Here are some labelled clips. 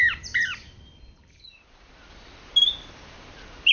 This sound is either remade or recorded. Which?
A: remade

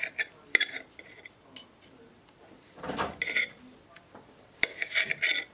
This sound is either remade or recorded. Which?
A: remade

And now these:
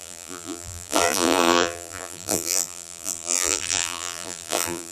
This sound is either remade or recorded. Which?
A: remade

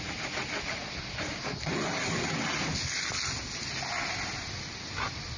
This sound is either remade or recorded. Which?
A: recorded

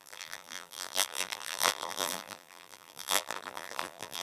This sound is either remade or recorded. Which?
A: remade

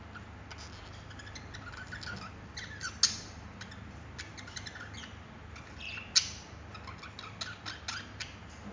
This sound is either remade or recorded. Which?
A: recorded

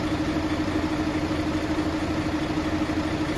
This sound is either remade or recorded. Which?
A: recorded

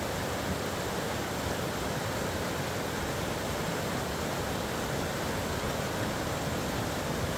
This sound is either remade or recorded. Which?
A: recorded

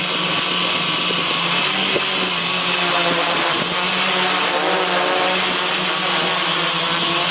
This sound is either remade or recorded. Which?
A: recorded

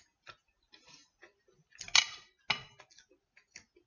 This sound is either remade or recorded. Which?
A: recorded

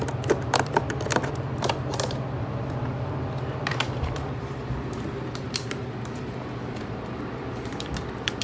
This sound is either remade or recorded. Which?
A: remade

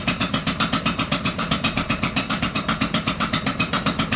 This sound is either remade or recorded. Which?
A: remade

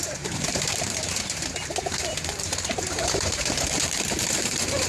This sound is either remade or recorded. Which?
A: remade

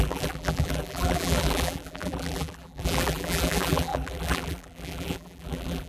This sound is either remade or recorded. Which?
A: remade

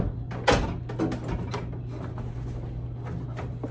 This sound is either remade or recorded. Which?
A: recorded